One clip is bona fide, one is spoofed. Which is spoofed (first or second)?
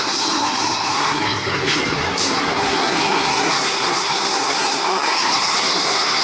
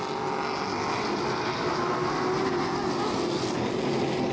first